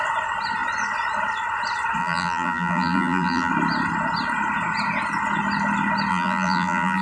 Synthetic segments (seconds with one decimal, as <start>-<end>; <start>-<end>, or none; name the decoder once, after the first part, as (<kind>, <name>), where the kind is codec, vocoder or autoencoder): 2.0-3.5 (vocoder, BigVGAN v2); 6.1-7.0